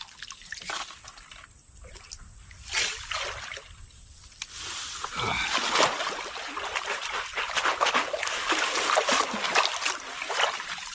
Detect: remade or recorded recorded